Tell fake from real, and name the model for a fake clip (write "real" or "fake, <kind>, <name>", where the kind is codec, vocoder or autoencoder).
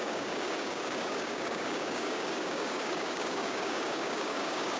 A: fake, codec, DAC